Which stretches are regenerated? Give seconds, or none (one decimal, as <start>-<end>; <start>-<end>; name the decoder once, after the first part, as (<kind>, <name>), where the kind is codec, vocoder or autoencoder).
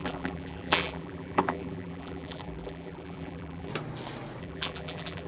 0.0-3.7 (vocoder, BigVGAN v2); 4.4-5.3